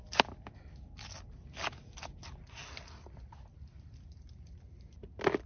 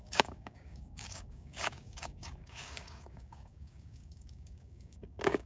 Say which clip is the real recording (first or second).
first